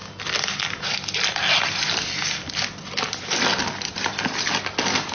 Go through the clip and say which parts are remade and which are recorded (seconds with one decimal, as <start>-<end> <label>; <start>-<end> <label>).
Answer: 0.0-5.1 recorded